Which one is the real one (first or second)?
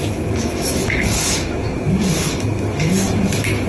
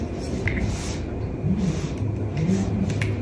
second